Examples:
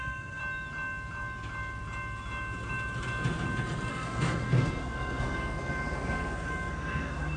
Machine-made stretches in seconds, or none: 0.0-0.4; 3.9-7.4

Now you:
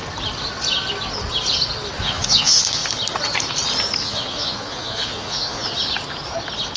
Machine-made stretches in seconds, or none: 2.0-2.8; 4.0-5.7